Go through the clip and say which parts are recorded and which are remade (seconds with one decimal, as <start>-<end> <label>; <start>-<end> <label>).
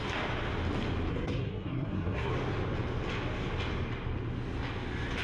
0.0-1.1 recorded; 1.1-2.3 remade; 2.3-5.2 recorded